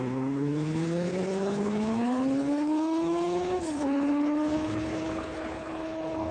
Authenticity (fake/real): fake